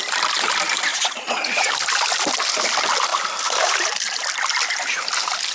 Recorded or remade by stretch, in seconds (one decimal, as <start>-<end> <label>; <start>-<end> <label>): 0.0-0.9 recorded; 0.9-1.7 remade; 1.7-5.5 recorded